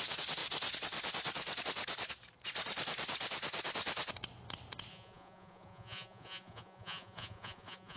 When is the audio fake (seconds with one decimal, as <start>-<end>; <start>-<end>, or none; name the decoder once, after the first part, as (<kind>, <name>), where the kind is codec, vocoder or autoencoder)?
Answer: 4.9-8.0 (vocoder, Vocos)